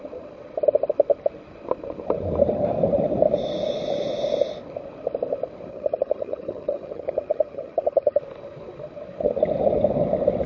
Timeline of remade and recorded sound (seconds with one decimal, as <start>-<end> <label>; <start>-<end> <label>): 0.0-5.7 recorded; 5.7-8.2 remade; 8.2-10.5 recorded